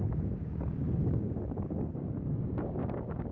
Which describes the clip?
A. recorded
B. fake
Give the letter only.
B